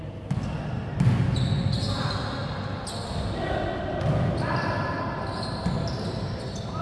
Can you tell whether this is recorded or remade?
recorded